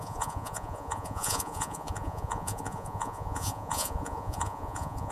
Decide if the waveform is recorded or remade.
remade